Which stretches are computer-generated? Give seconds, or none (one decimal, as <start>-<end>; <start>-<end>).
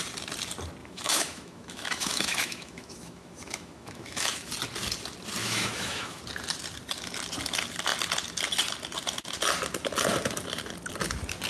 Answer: 0.8-4.5; 5.4-6.2